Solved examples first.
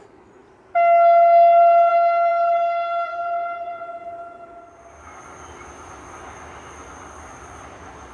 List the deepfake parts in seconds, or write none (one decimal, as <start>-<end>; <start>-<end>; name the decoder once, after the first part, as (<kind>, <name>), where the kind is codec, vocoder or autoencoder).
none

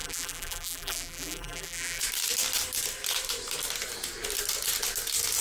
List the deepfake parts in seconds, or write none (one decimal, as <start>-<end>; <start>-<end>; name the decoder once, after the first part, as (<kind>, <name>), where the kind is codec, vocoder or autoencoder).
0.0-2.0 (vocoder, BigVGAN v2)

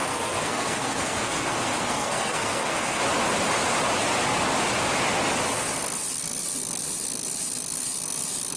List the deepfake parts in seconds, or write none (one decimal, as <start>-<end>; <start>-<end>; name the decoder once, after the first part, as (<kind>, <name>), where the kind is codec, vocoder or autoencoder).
0.0-3.0 (codec, SNAC)